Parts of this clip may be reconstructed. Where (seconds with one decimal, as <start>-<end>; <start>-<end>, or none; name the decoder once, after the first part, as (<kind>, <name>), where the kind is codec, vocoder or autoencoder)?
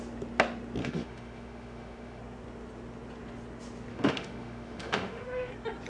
0.8-2.2 (autoencoder, DAC-VAE); 3.9-5.5